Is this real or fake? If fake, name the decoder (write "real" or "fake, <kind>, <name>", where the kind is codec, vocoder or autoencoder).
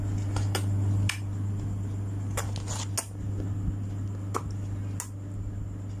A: real